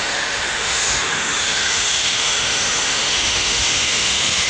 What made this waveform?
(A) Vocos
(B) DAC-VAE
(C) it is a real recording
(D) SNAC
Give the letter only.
B